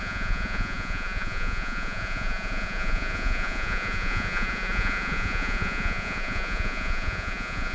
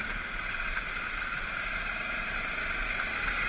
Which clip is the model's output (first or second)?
first